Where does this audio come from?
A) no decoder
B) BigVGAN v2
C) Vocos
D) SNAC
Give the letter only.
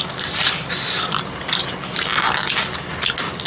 A